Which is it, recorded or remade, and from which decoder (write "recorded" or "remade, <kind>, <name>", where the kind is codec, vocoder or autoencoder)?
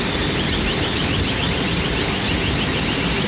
recorded